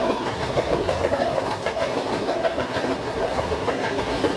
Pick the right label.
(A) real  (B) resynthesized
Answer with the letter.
B